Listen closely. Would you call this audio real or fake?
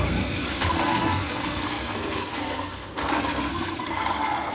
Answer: fake